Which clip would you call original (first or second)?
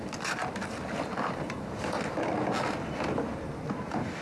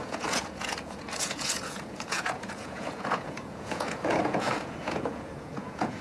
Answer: first